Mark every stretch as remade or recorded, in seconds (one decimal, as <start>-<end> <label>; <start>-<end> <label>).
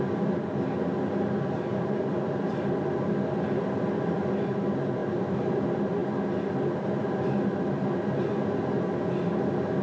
0.0-1.7 recorded; 1.7-2.9 remade; 2.9-5.0 recorded; 5.0-5.6 remade; 5.6-9.8 recorded